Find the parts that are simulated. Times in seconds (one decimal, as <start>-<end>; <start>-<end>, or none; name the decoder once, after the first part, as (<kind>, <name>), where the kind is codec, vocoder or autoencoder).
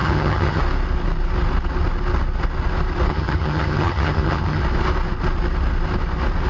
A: 0.0-0.6 (vocoder, HiFi-GAN); 3.1-4.6